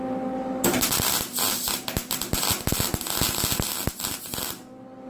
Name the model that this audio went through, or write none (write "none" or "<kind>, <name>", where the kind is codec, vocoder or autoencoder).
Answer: none